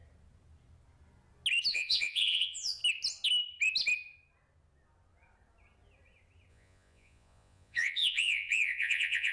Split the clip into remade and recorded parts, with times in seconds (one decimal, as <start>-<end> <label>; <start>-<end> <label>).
0.0-1.7 recorded; 1.7-2.8 remade; 2.8-6.5 recorded; 6.5-9.3 remade